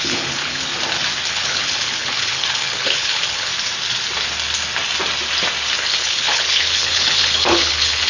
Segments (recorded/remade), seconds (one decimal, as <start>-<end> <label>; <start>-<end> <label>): 0.0-0.7 remade; 0.7-1.3 recorded; 1.3-3.5 remade; 3.5-5.7 recorded; 5.7-8.1 remade